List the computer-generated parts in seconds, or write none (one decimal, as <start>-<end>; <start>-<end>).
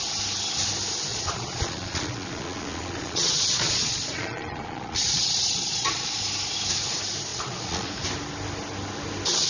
1.1-6.2; 7.3-7.9